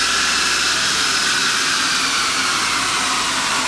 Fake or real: real